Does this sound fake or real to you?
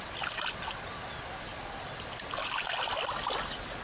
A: real